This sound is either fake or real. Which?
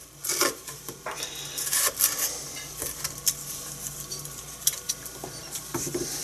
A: real